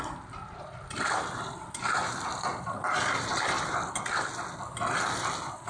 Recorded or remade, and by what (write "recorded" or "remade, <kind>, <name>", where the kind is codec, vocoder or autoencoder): recorded